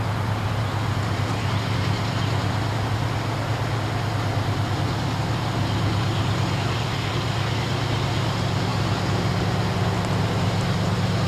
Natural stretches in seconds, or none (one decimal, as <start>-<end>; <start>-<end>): 0.0-11.3